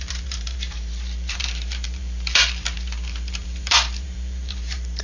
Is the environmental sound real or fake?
fake